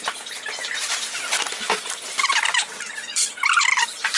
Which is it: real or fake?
real